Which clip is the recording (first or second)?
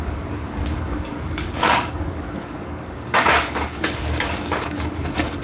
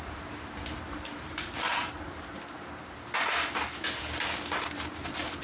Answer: second